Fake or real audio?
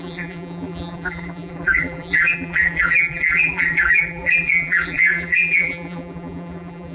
fake